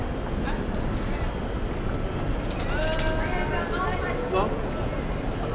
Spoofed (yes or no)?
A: no